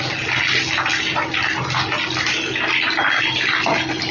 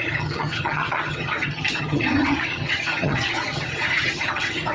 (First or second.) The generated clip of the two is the second